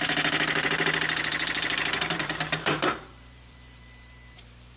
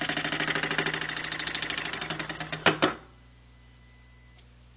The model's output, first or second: first